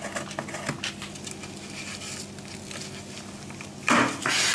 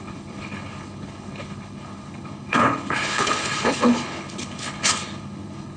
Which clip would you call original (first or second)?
first